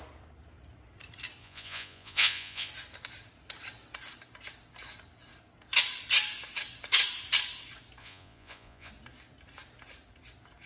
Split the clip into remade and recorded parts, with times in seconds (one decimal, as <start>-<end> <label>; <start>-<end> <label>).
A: 0.0-1.4 recorded; 1.4-2.7 remade; 2.7-8.0 recorded; 8.0-8.9 remade; 8.9-10.7 recorded